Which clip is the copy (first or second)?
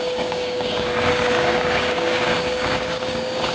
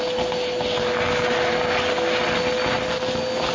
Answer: first